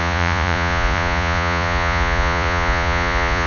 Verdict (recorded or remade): remade